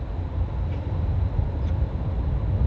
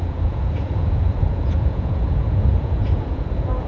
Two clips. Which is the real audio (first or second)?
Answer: first